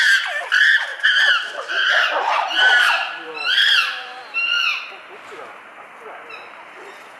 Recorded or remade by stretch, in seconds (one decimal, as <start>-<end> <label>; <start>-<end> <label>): 0.0-0.9 recorded; 0.9-4.8 remade; 4.8-7.2 recorded